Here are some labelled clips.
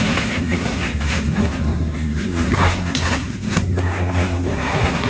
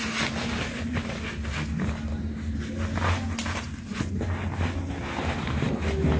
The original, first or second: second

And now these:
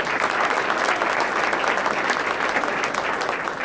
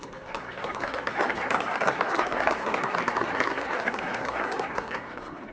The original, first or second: first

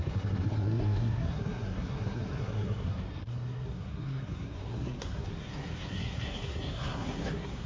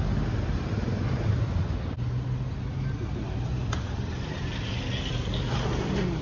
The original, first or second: second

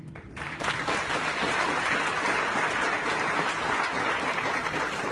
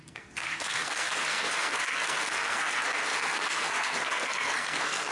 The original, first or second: first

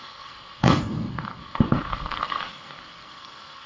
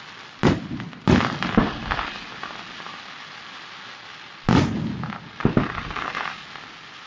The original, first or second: second